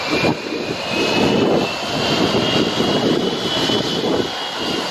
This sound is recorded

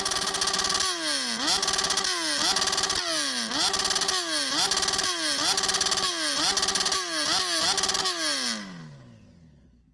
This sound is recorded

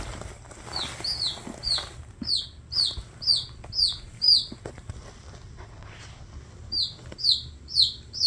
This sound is recorded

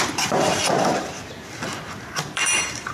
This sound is remade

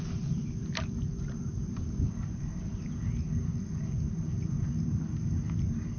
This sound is recorded